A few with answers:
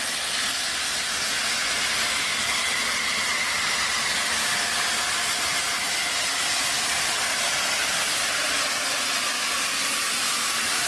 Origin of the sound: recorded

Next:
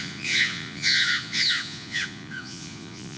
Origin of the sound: remade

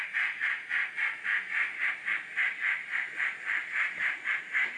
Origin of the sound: recorded